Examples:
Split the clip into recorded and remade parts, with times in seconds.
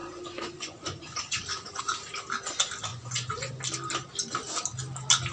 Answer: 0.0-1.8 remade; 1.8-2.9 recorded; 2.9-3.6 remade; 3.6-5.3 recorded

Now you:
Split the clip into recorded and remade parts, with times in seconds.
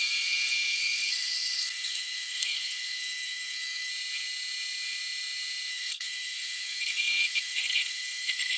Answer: 0.0-3.9 remade; 3.9-5.7 recorded; 5.7-8.6 remade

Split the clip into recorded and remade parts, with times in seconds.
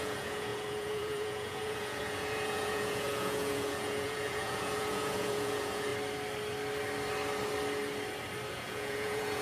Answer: 0.0-5.9 remade; 5.9-8.5 recorded; 8.5-9.4 remade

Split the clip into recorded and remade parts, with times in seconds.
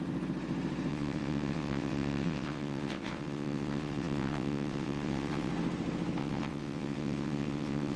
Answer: 0.0-0.9 recorded; 0.9-5.5 remade; 5.5-6.2 recorded; 6.2-8.0 remade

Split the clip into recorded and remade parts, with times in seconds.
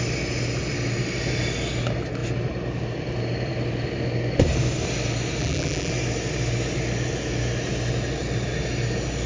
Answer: 0.0-5.4 recorded; 5.4-5.9 remade; 5.9-9.3 recorded